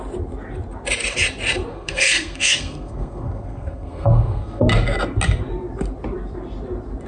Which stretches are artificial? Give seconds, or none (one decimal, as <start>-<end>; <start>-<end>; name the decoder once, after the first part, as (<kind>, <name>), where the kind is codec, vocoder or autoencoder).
1.7-4.7 (codec, SNAC)